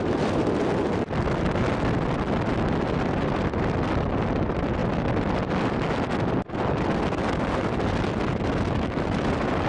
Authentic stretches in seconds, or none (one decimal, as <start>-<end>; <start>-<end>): 0.0-9.7